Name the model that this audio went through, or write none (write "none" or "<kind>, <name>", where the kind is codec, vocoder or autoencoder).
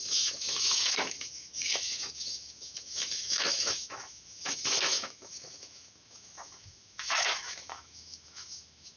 autoencoder, DAC-VAE